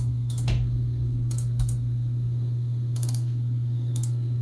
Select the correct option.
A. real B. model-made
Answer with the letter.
B